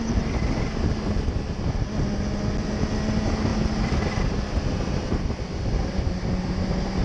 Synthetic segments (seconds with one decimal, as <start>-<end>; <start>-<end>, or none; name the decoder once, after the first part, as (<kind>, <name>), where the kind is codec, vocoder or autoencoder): none